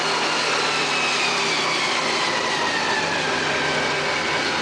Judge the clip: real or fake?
real